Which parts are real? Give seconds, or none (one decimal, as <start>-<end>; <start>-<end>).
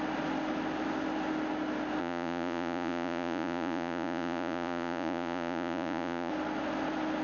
0.0-2.0; 6.3-7.2